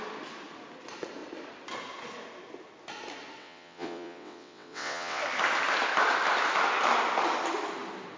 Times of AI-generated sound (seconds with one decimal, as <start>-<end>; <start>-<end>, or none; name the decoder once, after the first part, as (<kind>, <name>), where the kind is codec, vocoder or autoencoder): 3.4-5.2 (vocoder, WaveNeXt)